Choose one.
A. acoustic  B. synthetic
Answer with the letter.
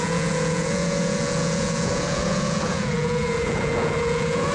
B